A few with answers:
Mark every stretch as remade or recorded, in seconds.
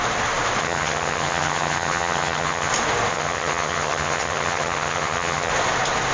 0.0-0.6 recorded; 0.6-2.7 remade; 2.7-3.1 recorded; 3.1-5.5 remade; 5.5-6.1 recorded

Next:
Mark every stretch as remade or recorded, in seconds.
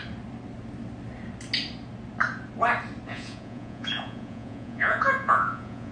0.0-3.1 recorded; 3.1-5.9 remade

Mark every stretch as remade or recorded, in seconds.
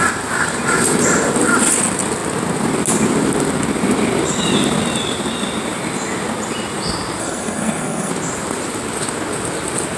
0.0-7.2 recorded; 7.2-8.1 remade; 8.1-10.0 recorded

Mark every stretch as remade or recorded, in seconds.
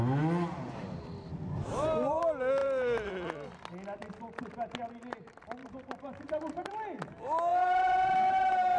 0.0-1.7 recorded; 1.7-2.2 remade; 2.2-2.6 recorded; 2.6-3.1 remade; 3.1-5.6 recorded; 5.6-6.7 remade; 6.7-7.5 recorded; 7.5-8.8 remade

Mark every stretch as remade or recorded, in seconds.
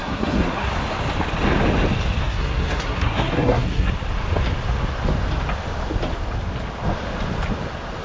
0.0-0.7 remade; 0.7-2.2 recorded; 2.2-3.9 remade; 3.9-8.0 recorded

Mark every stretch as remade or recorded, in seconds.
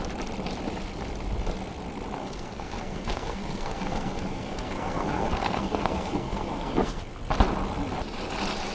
0.0-2.2 recorded; 2.2-7.0 remade; 7.0-8.7 recorded